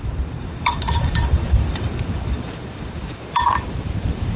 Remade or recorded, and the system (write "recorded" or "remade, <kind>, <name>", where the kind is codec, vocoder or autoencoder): remade, vocoder, BigVGAN v2